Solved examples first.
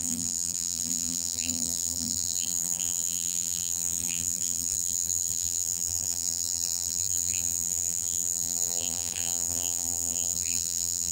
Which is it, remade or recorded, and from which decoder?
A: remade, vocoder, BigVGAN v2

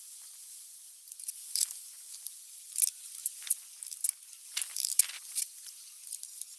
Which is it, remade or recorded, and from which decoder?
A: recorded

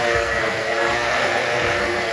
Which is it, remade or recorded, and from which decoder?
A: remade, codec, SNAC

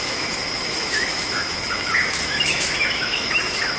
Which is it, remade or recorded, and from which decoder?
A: remade, autoencoder, DAC-VAE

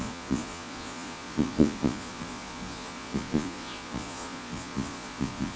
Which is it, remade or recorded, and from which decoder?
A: remade, vocoder, Vocos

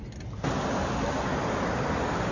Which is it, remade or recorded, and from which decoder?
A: recorded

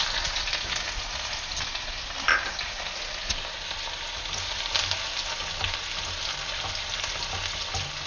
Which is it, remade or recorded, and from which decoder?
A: recorded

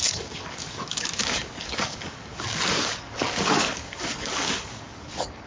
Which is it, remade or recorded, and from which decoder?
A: remade, codec, DAC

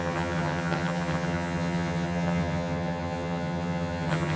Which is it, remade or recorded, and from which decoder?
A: remade, vocoder, HiFi-GAN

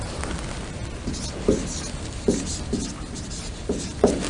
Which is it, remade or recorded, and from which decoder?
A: recorded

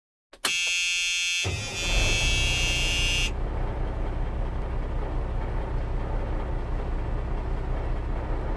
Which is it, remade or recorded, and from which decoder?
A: recorded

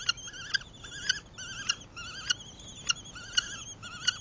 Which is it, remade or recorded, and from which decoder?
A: recorded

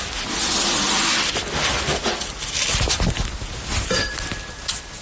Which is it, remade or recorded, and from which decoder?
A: recorded